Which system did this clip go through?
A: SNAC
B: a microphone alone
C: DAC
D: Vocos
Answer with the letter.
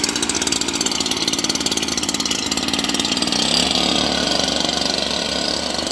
B